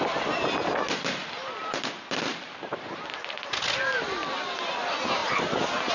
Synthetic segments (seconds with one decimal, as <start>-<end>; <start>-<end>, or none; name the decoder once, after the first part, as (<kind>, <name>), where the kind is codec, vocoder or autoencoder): none